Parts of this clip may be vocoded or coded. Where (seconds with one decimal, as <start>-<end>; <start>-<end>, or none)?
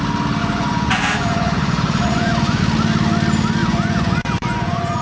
0.4-2.6; 3.6-5.0